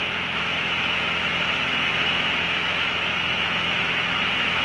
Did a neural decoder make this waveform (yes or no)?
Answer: yes